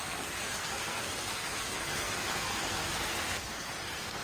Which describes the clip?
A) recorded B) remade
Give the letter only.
B